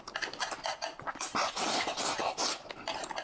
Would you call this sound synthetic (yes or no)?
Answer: no